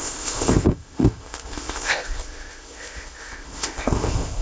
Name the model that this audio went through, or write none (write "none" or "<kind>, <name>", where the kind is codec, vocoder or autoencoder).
codec, ZipCodec